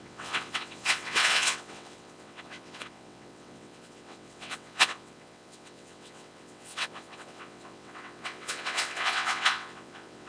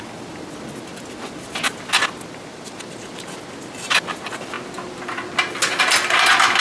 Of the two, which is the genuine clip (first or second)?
second